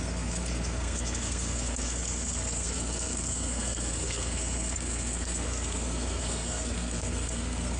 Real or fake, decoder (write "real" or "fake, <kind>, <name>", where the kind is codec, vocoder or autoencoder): fake, codec, SNAC